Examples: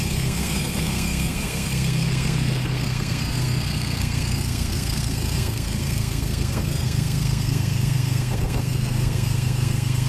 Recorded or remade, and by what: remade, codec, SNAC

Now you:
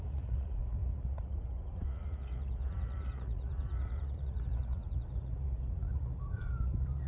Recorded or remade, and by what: remade, vocoder, Vocos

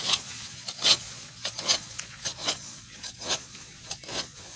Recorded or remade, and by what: remade, vocoder, Vocos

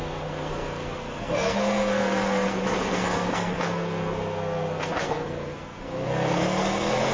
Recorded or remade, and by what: remade, codec, SNAC